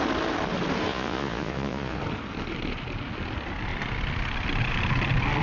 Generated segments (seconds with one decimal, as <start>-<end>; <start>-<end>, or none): 0.9-2.0